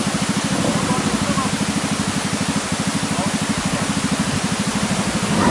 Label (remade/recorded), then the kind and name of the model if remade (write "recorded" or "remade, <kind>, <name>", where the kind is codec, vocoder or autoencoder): recorded